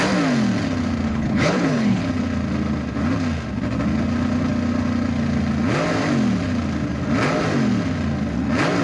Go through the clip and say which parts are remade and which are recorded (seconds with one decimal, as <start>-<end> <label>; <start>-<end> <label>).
0.0-1.1 recorded; 1.1-2.0 remade; 2.0-8.8 recorded

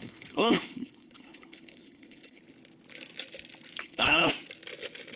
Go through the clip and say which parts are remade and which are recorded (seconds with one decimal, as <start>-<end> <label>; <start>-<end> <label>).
0.0-2.4 remade; 2.4-3.8 recorded; 3.8-4.3 remade; 4.3-5.2 recorded

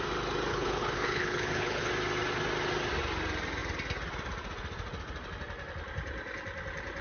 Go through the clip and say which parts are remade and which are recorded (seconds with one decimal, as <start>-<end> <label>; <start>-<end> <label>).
0.0-0.5 recorded; 0.5-1.9 remade; 1.9-7.0 recorded

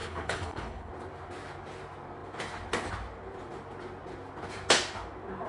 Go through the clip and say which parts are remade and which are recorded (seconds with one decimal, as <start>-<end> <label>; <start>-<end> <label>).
0.0-0.9 remade; 0.9-5.5 recorded